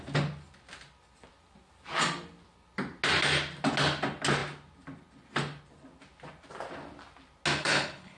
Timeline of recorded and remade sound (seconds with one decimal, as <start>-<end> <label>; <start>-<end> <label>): 0.0-7.6 recorded; 7.6-8.2 remade